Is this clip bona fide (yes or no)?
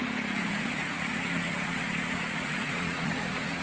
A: no